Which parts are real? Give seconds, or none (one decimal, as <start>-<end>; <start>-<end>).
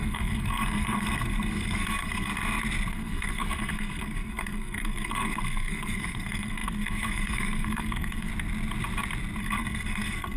2.3-2.9; 8.3-9.4